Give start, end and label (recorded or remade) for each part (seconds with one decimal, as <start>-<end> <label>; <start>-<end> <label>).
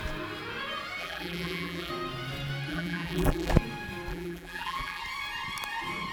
0.0-1.0 recorded; 1.0-1.9 remade; 1.9-2.7 recorded; 2.7-3.5 remade; 3.5-4.1 recorded; 4.1-5.0 remade; 5.0-6.1 recorded